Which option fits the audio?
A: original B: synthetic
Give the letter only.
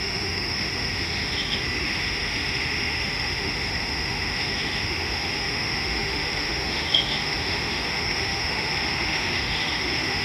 B